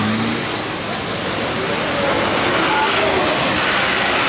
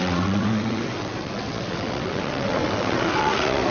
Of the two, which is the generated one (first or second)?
second